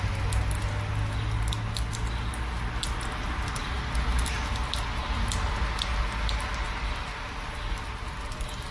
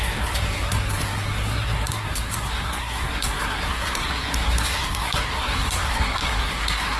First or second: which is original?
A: first